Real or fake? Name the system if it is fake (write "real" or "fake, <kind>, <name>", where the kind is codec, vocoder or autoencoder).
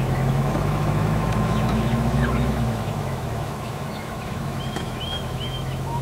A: fake, autoencoder, DAC-VAE